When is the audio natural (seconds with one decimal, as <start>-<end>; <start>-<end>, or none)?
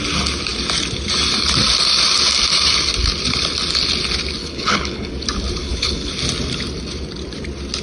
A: 0.0-4.4; 5.1-5.6; 6.1-7.8